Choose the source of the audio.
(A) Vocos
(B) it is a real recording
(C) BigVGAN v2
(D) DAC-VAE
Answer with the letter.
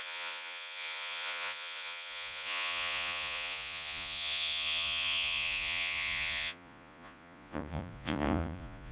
A